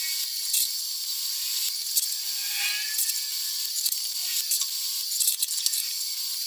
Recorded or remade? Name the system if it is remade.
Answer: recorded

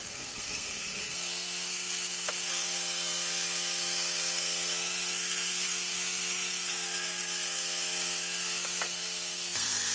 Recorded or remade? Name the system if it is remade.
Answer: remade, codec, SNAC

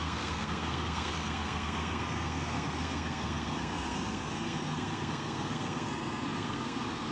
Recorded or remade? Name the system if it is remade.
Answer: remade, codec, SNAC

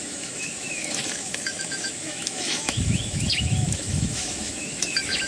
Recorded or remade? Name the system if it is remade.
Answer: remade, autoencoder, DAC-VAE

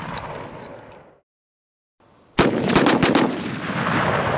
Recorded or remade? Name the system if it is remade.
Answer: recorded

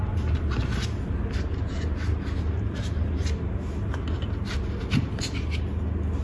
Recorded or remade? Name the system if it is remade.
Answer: recorded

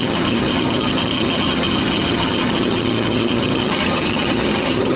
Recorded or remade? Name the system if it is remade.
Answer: remade, vocoder, HiFi-GAN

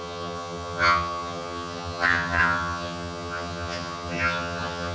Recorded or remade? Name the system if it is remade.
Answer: remade, vocoder, HiFi-GAN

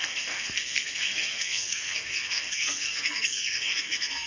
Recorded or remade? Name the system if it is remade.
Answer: remade, codec, SNAC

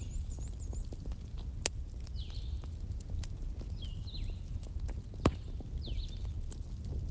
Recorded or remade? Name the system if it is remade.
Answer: recorded